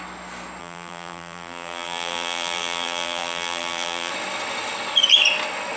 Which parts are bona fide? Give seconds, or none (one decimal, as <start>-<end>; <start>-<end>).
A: 0.0-0.6; 4.1-5.8